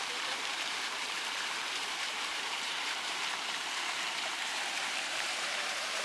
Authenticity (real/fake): fake